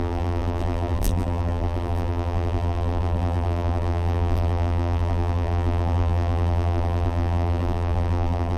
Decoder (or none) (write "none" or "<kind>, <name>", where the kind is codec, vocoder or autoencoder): vocoder, BigVGAN v2